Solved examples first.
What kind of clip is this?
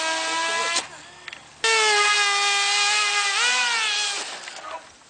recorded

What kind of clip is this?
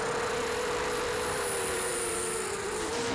remade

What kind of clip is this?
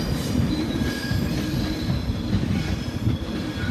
recorded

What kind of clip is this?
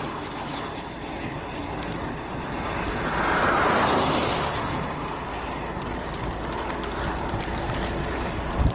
remade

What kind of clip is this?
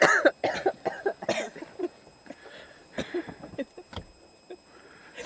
remade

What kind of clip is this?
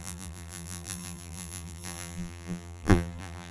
remade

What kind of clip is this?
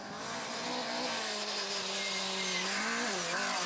recorded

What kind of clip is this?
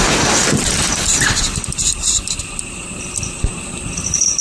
remade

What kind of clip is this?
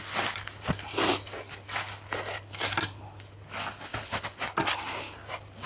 recorded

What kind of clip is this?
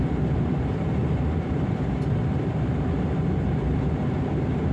remade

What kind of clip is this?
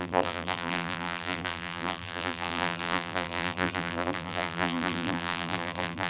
remade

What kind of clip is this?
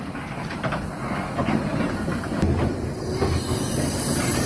recorded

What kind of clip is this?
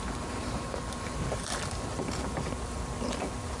remade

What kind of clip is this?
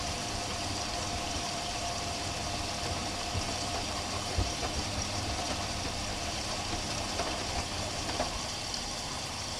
remade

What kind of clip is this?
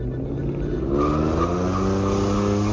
recorded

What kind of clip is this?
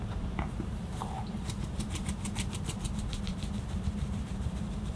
remade